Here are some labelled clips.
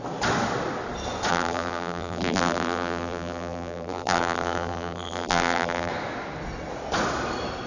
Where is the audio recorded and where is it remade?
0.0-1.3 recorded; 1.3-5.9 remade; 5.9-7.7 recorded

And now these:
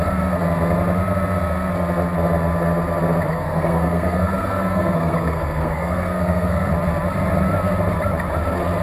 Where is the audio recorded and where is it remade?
0.0-3.3 recorded; 3.3-6.7 remade; 6.7-8.8 recorded

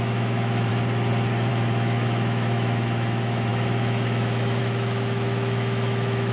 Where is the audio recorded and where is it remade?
0.0-0.7 remade; 0.7-1.5 recorded; 1.5-6.3 remade

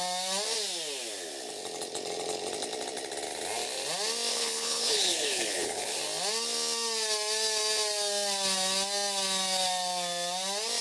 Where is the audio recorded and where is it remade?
0.0-4.3 recorded; 4.3-6.0 remade; 6.0-10.8 recorded

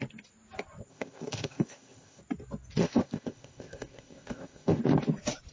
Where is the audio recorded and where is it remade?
0.0-0.9 recorded; 0.9-2.2 remade; 2.2-2.8 recorded; 2.8-4.8 remade; 4.8-5.5 recorded

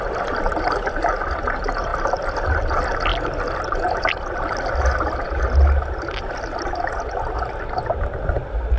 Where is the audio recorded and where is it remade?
0.0-8.8 recorded

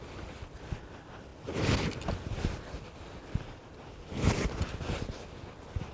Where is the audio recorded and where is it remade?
0.0-5.9 recorded

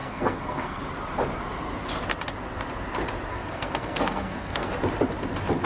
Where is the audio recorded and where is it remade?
0.0-0.8 remade; 0.8-3.3 recorded; 3.3-4.7 remade; 4.7-5.7 recorded